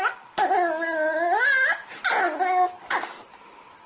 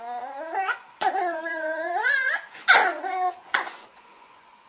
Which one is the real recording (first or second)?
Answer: first